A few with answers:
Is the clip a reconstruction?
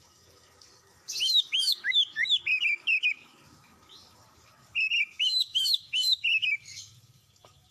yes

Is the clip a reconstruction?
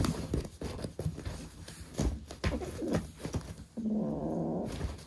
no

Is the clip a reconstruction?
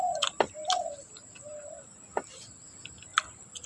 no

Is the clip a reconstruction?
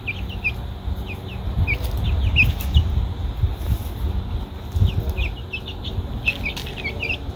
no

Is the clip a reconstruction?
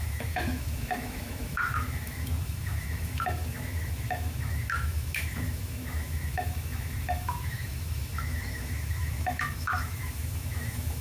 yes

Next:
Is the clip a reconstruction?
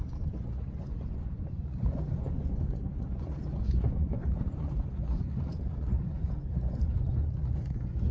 yes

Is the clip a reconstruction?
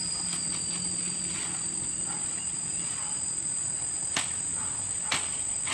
no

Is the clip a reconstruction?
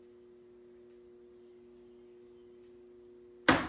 no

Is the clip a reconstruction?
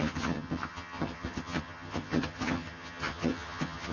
yes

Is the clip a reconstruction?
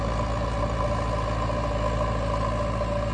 no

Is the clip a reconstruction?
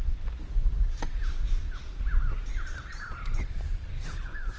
yes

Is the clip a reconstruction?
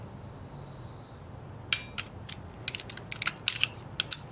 no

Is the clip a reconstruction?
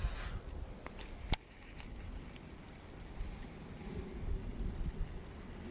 no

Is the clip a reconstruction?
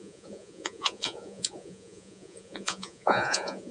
yes